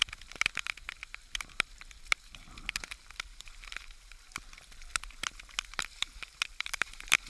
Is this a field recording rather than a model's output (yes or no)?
yes